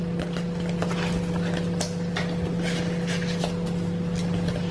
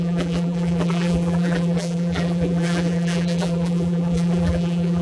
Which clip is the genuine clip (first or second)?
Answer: first